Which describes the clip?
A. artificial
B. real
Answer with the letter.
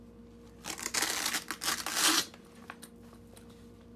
B